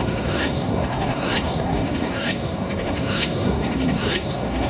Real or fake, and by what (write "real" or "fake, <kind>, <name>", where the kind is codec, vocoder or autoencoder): fake, codec, SNAC